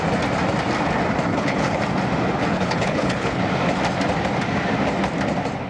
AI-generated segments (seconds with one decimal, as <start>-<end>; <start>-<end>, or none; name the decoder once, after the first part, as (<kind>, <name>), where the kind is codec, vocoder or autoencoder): 1.3-1.8 (codec, HILCodec); 2.5-3.4